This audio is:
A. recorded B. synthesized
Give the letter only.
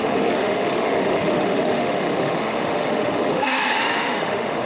B